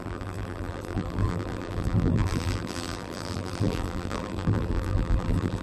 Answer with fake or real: fake